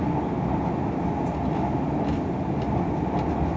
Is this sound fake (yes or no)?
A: no